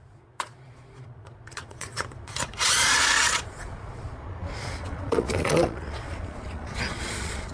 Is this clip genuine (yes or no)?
no